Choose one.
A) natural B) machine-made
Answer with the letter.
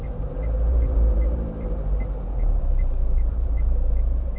B